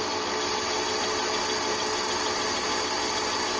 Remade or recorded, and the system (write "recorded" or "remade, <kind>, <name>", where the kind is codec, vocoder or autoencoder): recorded